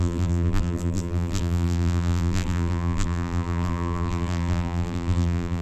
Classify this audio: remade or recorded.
remade